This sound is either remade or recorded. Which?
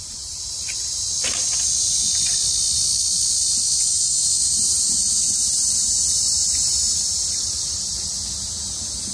recorded